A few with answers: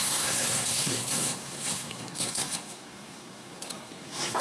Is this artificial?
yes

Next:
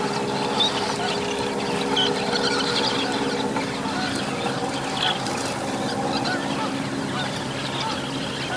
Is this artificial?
no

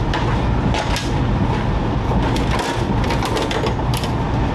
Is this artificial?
no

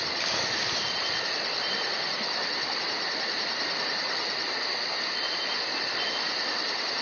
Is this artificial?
no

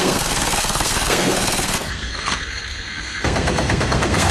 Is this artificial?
yes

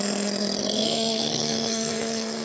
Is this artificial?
yes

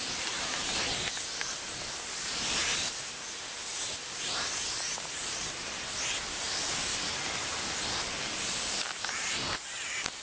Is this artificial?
no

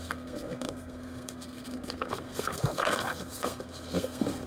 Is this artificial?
yes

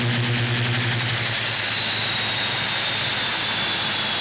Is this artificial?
no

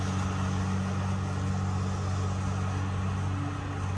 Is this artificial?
no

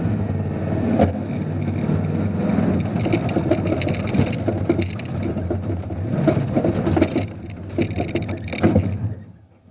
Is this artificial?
no